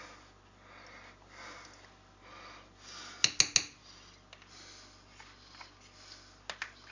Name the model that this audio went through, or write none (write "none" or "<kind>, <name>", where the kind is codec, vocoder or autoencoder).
none